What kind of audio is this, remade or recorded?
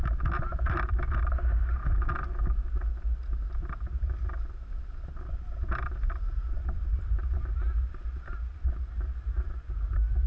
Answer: recorded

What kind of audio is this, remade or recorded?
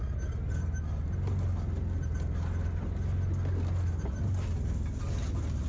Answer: recorded